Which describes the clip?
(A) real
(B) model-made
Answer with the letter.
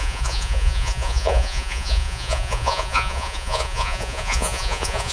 B